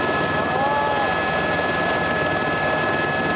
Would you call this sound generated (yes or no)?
no